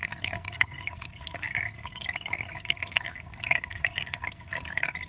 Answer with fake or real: fake